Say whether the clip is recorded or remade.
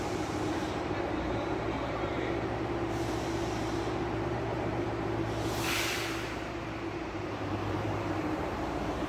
remade